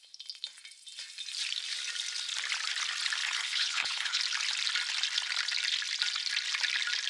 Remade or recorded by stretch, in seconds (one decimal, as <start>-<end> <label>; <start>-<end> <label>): 0.0-3.2 recorded; 3.2-4.2 remade; 4.2-7.1 recorded